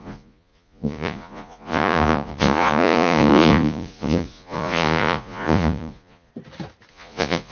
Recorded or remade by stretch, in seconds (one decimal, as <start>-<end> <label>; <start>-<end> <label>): 0.0-6.3 remade; 6.3-6.9 recorded; 6.9-7.5 remade